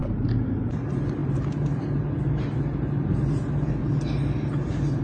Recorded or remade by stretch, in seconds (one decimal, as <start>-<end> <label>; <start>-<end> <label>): 0.0-0.6 recorded; 0.6-5.0 remade